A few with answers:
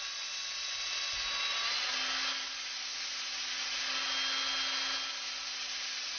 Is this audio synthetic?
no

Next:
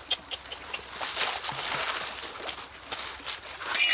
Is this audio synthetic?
no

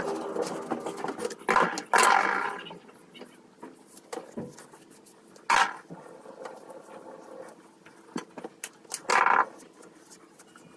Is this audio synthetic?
no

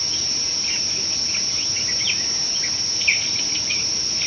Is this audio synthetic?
no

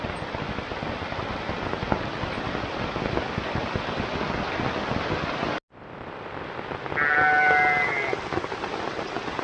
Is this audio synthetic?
no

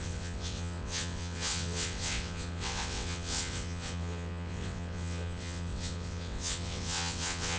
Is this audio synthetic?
yes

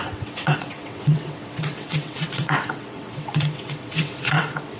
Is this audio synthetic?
yes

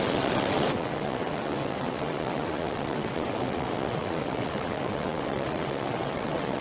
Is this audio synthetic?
yes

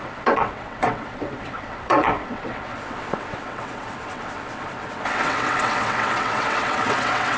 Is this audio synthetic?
yes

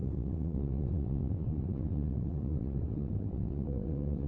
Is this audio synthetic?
yes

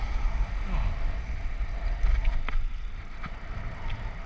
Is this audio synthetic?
no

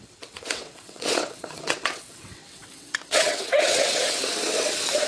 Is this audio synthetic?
yes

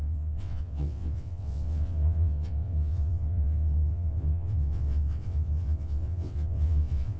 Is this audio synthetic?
yes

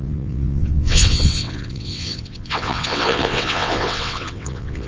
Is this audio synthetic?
yes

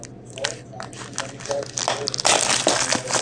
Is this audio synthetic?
no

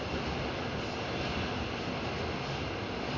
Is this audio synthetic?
no